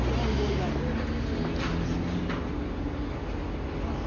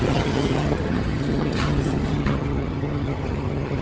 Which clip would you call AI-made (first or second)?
second